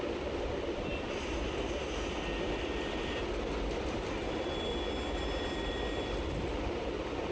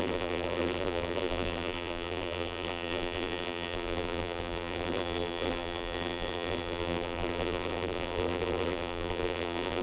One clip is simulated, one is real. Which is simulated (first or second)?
second